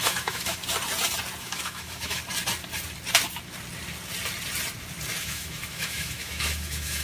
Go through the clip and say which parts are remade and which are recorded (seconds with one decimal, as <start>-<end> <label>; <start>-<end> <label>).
0.0-0.6 remade; 0.6-1.4 recorded; 1.4-2.2 remade; 2.2-5.2 recorded; 5.2-7.0 remade